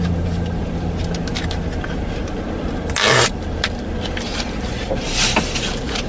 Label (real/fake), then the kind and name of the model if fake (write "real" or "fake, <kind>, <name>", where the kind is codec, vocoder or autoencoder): real